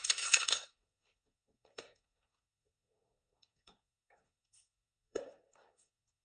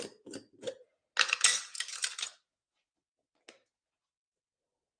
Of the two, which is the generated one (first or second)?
first